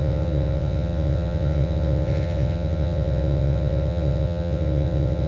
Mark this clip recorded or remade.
remade